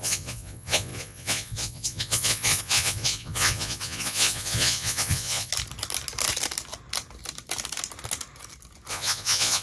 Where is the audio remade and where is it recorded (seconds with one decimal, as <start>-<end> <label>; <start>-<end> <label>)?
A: 0.0-5.5 remade; 5.5-8.9 recorded; 8.9-9.6 remade